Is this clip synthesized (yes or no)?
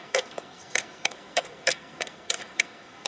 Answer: yes